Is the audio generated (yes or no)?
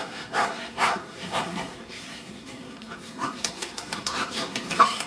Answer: yes